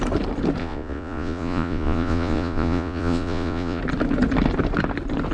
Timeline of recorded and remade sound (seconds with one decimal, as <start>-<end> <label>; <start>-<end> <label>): 0.0-0.6 recorded; 0.6-3.8 remade; 3.8-5.3 recorded